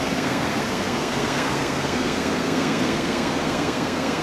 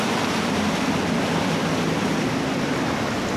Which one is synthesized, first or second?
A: first